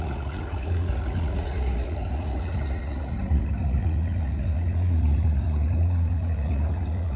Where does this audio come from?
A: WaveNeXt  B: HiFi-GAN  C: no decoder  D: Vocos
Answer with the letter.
D